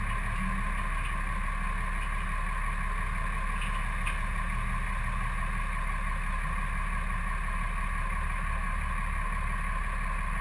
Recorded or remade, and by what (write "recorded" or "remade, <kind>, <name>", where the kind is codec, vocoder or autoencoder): recorded